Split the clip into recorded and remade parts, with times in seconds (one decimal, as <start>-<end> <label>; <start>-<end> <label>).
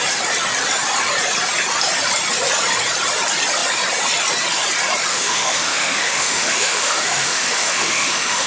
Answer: 0.0-5.1 recorded; 5.1-8.5 remade